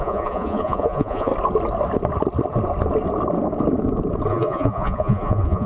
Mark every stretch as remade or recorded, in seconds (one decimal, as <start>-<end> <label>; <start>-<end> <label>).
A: 0.0-1.3 remade; 1.3-4.3 recorded; 4.3-5.7 remade